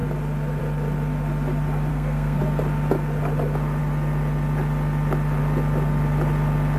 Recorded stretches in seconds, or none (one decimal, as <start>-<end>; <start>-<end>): 0.0-1.9; 2.4-6.8